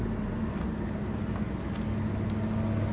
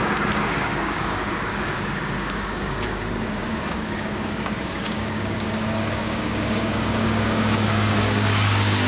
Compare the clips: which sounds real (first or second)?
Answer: first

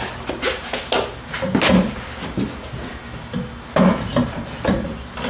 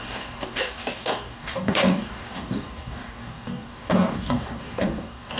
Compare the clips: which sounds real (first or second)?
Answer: first